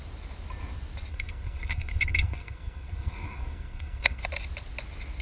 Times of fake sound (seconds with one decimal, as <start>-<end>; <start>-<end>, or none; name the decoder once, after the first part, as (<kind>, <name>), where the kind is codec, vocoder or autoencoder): 1.1-4.2 (codec, SNAC)